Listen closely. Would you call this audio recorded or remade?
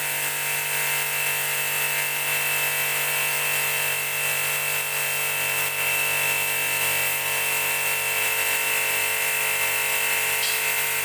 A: recorded